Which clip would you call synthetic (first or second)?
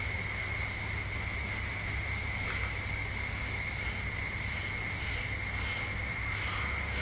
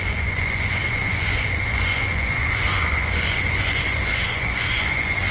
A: second